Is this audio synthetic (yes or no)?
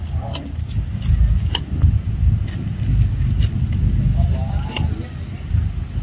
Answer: no